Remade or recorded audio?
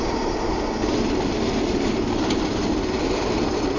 recorded